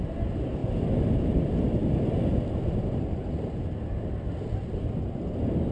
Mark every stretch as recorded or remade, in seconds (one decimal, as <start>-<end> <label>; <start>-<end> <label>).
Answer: 0.0-5.7 recorded